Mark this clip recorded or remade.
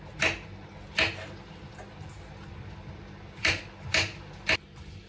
recorded